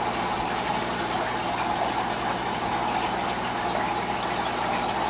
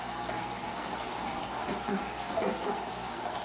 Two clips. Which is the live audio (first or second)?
first